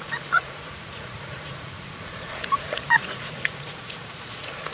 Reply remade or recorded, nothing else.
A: remade